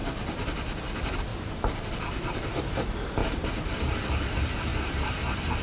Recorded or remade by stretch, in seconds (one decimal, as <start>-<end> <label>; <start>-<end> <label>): 0.0-1.3 recorded; 1.3-2.0 remade; 2.0-3.2 recorded; 3.2-3.8 remade; 3.8-5.6 recorded